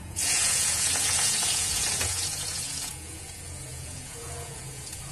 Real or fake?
fake